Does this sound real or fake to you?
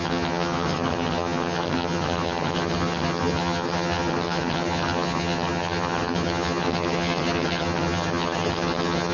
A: fake